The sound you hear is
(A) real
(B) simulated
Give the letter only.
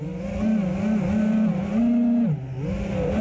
A